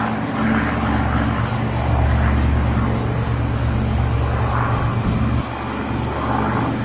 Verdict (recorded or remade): recorded